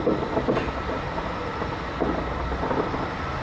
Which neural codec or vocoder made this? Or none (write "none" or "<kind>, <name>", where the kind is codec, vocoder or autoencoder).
none